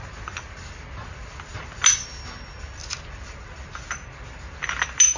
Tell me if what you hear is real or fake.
real